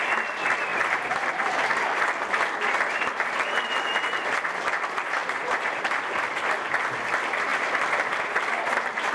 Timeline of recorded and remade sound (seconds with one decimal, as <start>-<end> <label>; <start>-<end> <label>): 0.0-0.7 recorded; 0.7-1.3 remade; 1.3-5.2 recorded; 5.2-6.4 remade; 6.4-9.1 recorded